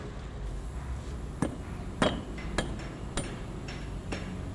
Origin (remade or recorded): recorded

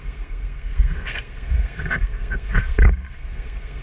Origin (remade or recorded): remade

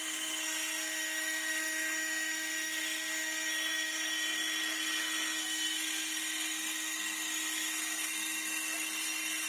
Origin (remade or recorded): remade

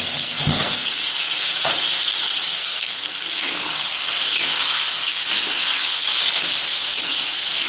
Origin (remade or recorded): remade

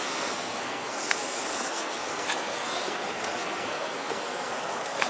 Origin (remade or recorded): remade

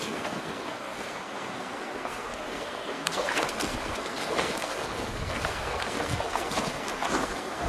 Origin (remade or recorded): remade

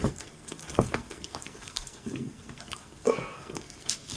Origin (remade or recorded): remade